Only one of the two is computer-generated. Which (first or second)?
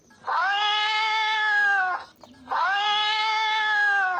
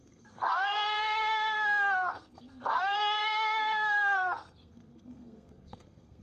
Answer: second